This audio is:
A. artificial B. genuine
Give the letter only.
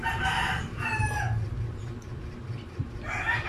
B